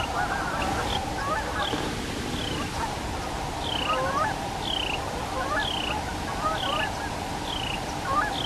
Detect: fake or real real